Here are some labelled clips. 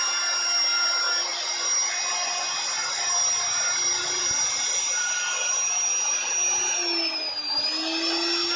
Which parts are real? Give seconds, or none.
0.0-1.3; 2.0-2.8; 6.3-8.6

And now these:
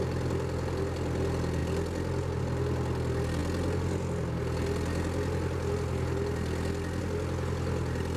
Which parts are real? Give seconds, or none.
0.0-8.2

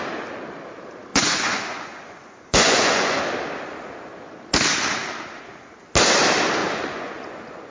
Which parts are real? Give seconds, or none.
0.0-1.1; 3.2-6.6

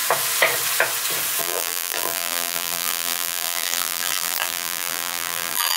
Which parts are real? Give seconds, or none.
0.0-1.4